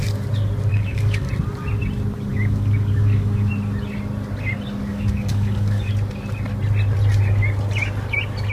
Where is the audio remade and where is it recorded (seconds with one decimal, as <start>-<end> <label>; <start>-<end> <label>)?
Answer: 0.0-0.7 recorded; 0.7-1.3 remade; 1.3-2.3 recorded; 2.3-3.5 remade; 3.5-4.9 recorded; 4.9-5.9 remade; 5.9-8.5 recorded